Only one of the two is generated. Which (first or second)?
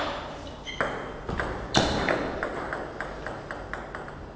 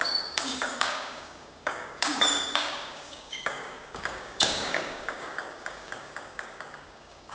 second